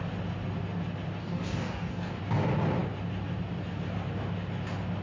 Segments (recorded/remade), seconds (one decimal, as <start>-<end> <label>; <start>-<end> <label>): 0.0-1.2 recorded; 1.2-2.2 remade; 2.2-5.0 recorded